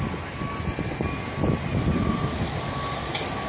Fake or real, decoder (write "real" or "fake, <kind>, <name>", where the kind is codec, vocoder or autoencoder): real